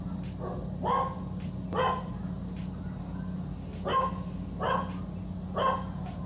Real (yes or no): yes